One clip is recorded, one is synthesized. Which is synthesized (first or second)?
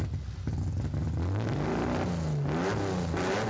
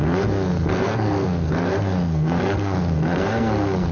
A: second